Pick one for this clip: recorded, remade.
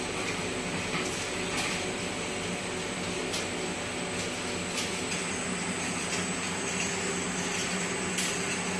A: recorded